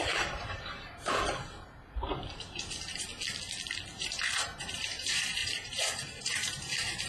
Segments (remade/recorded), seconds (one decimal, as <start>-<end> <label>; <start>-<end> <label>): 0.0-3.1 remade; 3.1-4.0 recorded; 4.0-7.1 remade